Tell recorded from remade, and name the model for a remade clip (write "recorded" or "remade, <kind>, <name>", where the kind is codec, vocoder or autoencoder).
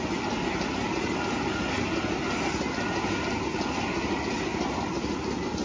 recorded